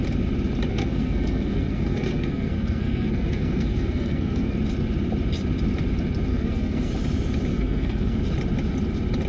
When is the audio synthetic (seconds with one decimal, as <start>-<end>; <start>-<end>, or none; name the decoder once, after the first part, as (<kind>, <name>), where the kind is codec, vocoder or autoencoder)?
0.7-4.6 (codec, SNAC); 6.3-6.9; 7.5-8.2